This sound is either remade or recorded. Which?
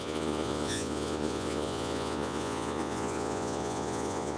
remade